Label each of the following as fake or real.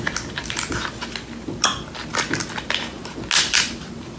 real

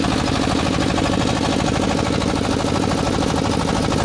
real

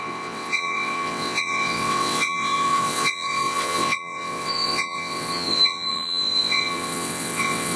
fake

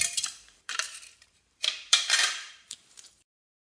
fake